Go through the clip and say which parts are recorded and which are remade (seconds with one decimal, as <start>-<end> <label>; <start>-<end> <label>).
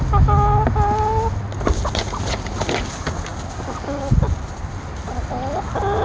0.0-6.0 recorded